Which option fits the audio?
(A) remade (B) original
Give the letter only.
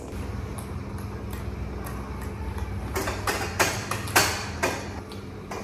B